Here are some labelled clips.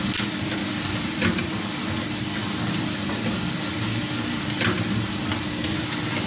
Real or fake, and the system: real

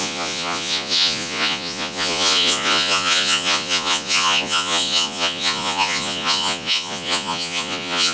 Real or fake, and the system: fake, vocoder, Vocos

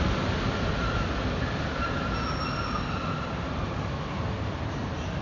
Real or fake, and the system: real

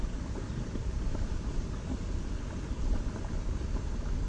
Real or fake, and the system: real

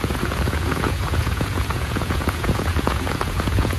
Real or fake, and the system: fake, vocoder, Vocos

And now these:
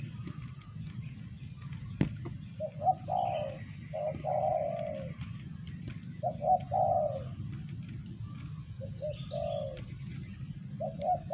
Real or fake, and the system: real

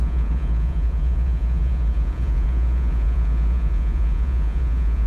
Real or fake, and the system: fake, vocoder, Vocos